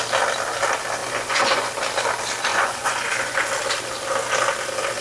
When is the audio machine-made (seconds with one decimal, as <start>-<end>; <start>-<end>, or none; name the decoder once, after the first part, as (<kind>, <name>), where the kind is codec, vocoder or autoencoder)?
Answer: 1.0-1.7 (vocoder, Vocos); 2.5-3.5